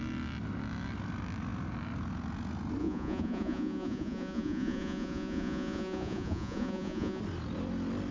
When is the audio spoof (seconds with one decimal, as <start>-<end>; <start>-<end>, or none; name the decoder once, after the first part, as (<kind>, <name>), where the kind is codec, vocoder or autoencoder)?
2.8-7.2 (vocoder, Vocos)